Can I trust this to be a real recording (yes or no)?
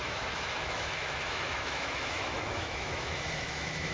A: no